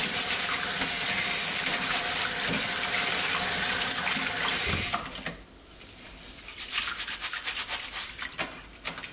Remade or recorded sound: recorded